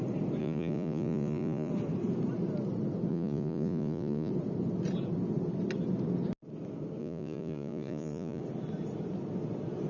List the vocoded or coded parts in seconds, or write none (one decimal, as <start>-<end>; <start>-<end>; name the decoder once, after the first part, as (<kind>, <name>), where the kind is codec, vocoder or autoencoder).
0.4-1.7 (vocoder, Vocos); 3.1-4.3; 7.0-8.4